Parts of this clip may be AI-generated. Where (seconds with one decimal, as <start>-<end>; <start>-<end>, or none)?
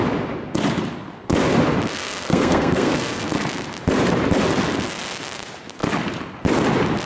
1.9-3.2